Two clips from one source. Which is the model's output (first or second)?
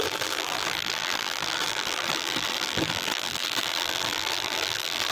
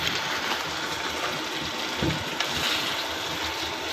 first